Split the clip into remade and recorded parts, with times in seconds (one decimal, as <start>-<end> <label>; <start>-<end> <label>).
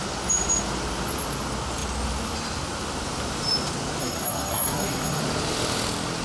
0.0-4.0 recorded; 4.0-5.2 remade; 5.2-6.2 recorded